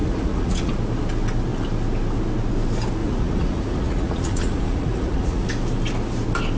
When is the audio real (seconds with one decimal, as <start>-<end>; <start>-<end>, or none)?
0.7-3.0; 5.5-6.6